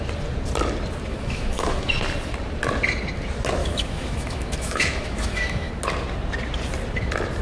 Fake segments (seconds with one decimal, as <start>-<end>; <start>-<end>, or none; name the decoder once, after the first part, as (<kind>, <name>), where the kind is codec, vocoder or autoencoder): 1.1-1.9 (autoencoder, DAC-VAE); 3.6-5.7